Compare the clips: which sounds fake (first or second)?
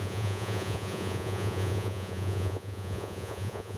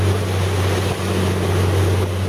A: first